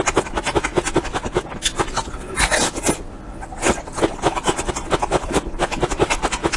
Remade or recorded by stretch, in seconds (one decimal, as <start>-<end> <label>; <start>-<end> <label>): 0.0-6.6 recorded